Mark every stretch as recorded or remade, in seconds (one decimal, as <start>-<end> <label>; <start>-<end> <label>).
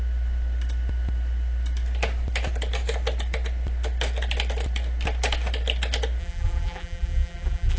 0.0-6.2 recorded; 6.2-7.8 remade